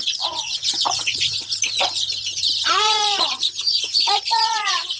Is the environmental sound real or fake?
fake